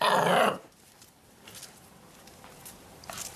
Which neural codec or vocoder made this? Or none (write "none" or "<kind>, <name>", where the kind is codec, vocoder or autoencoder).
none